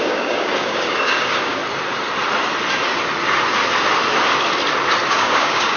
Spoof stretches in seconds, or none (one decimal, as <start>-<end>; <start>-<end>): 0.0-1.6; 5.1-5.8